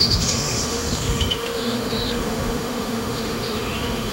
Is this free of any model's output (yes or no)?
no